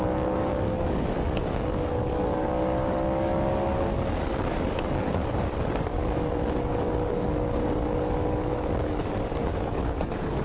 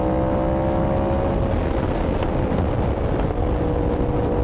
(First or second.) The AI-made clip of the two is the first